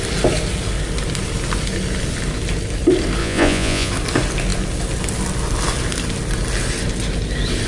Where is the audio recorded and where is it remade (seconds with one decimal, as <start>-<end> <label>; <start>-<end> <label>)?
0.0-3.2 recorded; 3.2-3.9 remade; 3.9-7.7 recorded